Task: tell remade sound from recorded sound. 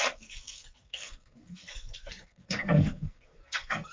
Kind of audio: remade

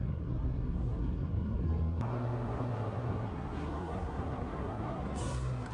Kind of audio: remade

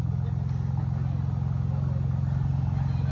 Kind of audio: recorded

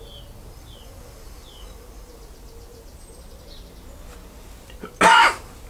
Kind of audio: recorded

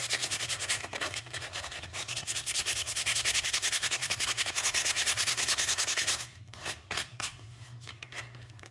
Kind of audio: remade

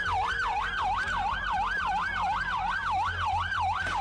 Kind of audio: recorded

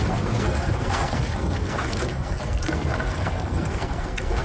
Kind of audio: remade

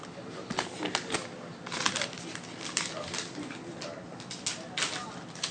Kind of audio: recorded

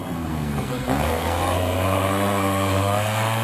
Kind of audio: remade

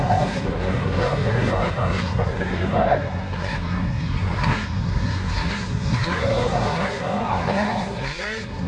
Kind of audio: remade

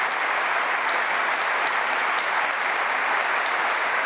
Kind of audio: recorded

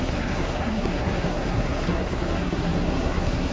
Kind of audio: remade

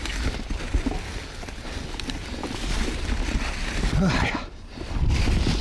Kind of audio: recorded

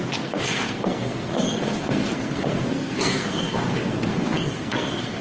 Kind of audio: remade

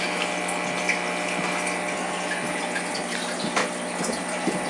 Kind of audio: recorded